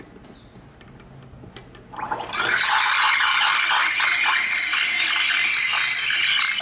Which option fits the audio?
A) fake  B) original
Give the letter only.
B